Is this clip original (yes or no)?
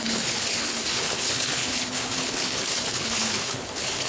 no